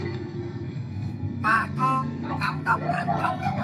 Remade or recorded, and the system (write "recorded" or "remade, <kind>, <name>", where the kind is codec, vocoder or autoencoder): remade, codec, SNAC